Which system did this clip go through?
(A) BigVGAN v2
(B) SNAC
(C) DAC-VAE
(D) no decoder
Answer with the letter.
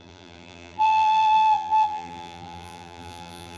A